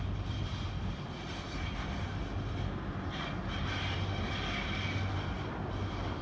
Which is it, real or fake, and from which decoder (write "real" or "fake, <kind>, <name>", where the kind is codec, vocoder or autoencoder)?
real